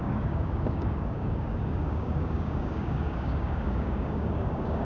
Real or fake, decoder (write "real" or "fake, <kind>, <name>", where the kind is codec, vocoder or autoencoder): fake, codec, DAC